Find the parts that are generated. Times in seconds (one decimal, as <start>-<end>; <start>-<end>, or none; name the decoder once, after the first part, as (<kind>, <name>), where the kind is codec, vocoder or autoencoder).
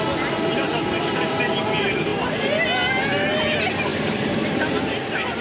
0.7-1.4 (vocoder, BigVGAN v2); 3.9-4.6